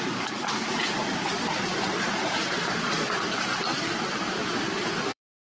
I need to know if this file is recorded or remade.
remade